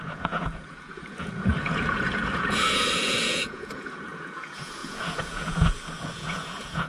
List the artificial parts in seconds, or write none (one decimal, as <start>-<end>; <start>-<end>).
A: 0.0-6.9